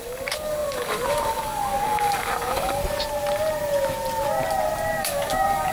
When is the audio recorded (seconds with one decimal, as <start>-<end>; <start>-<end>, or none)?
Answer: 2.8-5.0